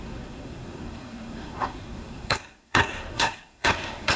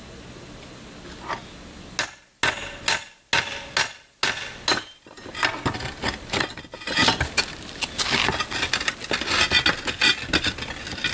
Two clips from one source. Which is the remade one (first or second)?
first